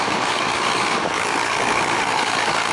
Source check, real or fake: fake